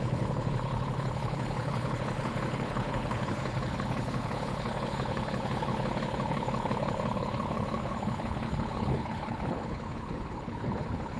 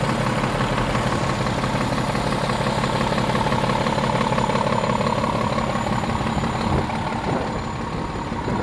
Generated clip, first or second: first